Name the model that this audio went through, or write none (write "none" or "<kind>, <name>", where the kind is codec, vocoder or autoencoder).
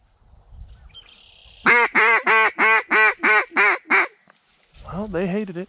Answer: none